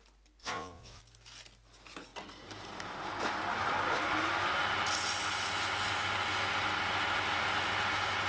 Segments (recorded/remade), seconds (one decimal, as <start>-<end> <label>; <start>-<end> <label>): 0.0-0.4 recorded; 0.4-1.0 remade; 1.0-8.3 recorded